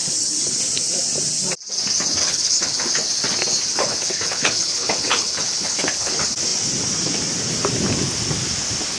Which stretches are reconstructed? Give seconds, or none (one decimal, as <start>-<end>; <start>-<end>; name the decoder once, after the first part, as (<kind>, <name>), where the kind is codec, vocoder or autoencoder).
0.0-0.6 (codec, HILCodec); 2.2-2.9; 3.7-6.1